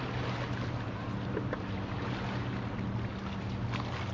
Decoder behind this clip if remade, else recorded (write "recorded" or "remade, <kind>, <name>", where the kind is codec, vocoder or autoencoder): recorded